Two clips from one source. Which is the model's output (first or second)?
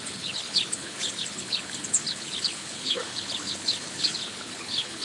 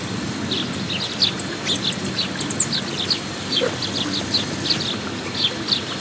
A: first